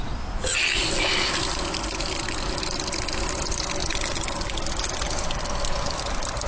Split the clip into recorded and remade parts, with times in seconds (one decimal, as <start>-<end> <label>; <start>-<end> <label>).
0.0-6.5 recorded